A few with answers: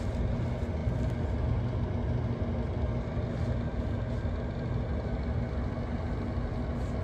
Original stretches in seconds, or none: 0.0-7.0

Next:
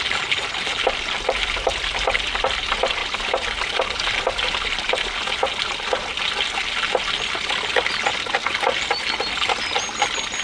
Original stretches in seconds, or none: 0.0-10.4

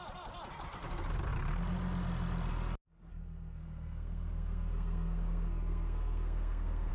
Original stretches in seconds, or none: 0.0-3.1

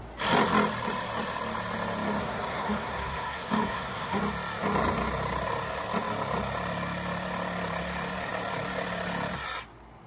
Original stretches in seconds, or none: 0.0-2.2; 4.2-10.1